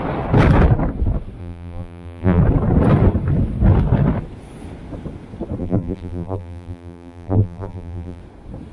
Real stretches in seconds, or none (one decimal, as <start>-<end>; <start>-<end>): 0.0-1.4; 2.4-5.6; 8.2-8.7